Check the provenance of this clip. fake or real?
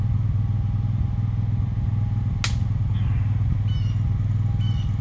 real